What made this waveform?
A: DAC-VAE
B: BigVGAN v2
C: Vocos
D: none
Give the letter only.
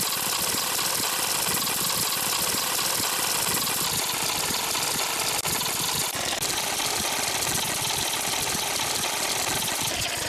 D